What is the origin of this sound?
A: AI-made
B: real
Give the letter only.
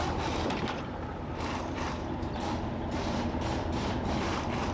A